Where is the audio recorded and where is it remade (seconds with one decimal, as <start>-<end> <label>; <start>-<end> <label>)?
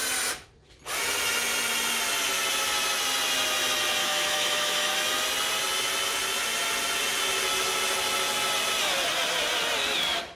0.0-4.0 recorded; 4.0-4.9 remade; 4.9-10.4 recorded